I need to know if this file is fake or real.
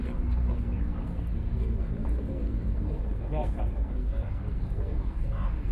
fake